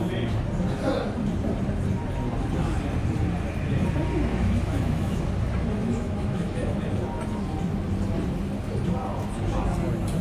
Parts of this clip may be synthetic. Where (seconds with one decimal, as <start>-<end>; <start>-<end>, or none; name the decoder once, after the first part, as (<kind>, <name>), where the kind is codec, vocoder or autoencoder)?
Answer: 4.3-5.2 (autoencoder, DAC-VAE); 5.8-6.8